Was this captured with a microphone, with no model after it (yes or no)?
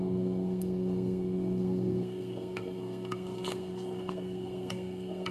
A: no